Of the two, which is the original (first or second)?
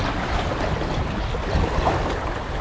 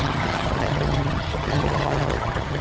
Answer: first